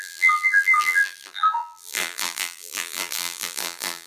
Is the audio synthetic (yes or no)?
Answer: yes